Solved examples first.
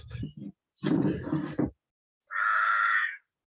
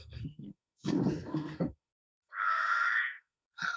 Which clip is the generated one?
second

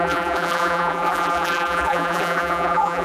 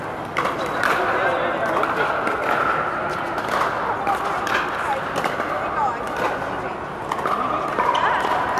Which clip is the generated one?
first